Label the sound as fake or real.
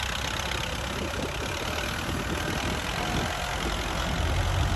real